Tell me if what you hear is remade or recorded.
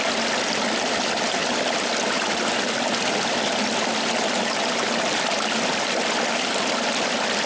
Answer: recorded